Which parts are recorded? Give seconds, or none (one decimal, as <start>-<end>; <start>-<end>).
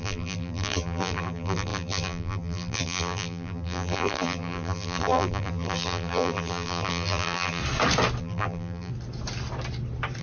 7.6-8.2; 8.9-10.2